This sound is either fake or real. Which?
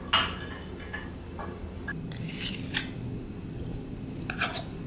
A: real